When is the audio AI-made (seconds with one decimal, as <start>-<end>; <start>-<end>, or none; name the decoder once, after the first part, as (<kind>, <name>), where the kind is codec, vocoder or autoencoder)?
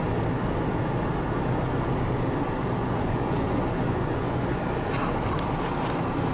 2.8-4.6 (vocoder, Vocos)